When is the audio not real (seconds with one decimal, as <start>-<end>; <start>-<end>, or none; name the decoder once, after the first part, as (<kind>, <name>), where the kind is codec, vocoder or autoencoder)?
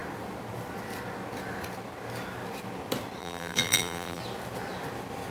3.2-4.2 (vocoder, BigVGAN v2)